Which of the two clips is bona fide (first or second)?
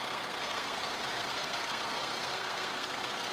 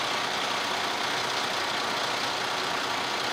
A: second